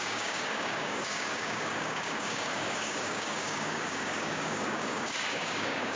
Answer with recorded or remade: remade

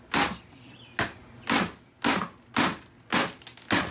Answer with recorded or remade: recorded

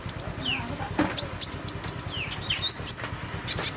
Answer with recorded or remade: recorded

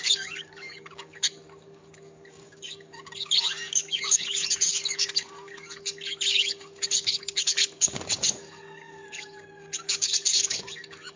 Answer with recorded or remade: remade